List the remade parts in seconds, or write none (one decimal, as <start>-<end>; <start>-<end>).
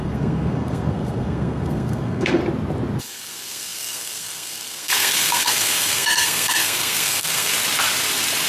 0.0-2.4; 3.0-7.5